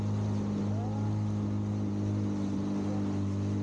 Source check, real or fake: real